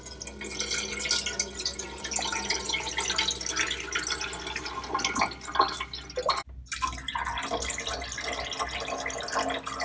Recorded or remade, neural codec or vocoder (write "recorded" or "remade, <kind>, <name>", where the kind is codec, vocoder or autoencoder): recorded